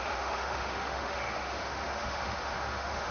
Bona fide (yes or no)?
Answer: no